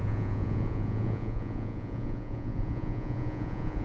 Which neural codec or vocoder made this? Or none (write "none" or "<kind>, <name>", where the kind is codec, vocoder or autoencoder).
vocoder, Vocos